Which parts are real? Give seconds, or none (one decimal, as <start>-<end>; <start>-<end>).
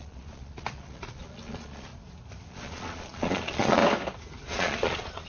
1.9-2.5; 3.8-4.5